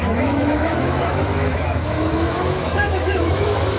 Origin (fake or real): fake